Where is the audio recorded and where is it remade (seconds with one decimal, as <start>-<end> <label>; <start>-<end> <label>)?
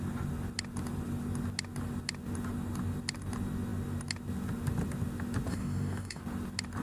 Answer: 0.0-5.5 recorded; 5.5-6.2 remade; 6.2-6.8 recorded